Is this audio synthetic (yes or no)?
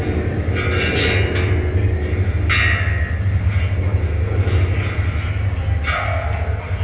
no